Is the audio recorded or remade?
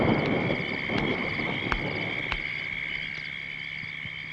recorded